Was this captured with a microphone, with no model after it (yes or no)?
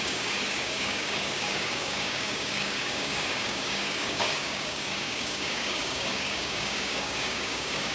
no